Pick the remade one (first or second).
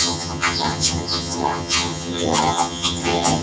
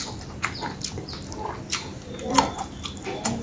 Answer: first